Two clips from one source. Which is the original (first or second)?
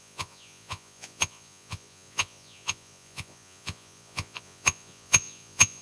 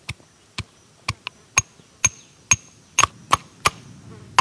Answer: second